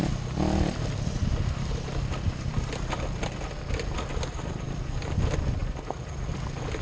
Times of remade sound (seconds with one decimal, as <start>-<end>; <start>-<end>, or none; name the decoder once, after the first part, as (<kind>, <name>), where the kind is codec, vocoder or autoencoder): none